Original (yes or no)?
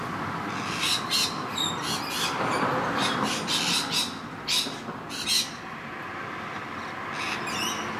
yes